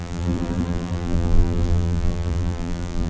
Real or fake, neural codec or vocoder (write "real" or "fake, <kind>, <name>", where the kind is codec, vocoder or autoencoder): fake, vocoder, BigVGAN v2